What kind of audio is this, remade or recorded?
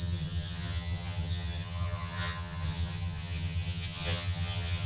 remade